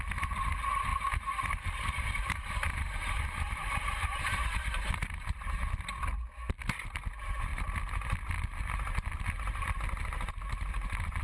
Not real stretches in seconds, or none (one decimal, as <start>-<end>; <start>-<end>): 0.9-5.7

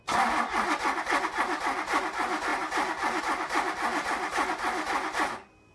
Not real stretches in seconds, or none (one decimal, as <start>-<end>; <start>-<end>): none

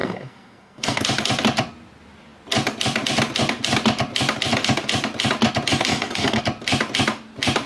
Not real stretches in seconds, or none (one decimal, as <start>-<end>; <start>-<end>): 0.0-1.0; 5.9-6.4

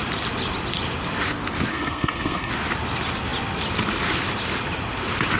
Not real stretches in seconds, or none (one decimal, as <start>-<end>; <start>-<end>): 1.7-2.5

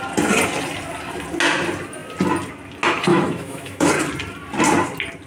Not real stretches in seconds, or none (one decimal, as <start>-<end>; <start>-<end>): 3.1-3.9

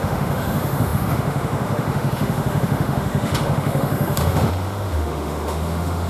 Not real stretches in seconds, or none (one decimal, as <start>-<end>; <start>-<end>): 0.0-6.1

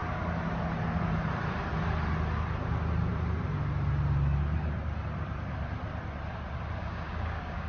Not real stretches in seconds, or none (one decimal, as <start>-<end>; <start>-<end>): 6.8-7.7

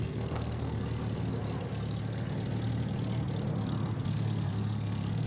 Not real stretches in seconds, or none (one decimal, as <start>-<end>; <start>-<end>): 0.0-0.8; 4.0-5.3